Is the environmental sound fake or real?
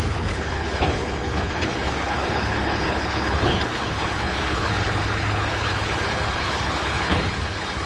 fake